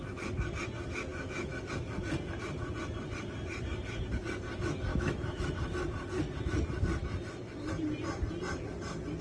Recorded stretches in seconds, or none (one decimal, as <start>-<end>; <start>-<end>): 0.0-1.1; 1.7-4.9; 5.5-9.2